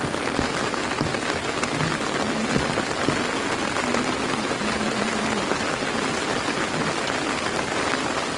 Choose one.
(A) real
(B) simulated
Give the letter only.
A